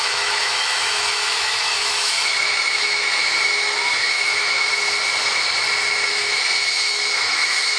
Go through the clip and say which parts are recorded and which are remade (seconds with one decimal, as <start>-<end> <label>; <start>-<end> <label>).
0.0-4.7 remade; 4.7-6.1 recorded; 6.1-7.8 remade